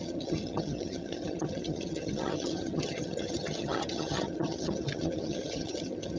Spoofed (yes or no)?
yes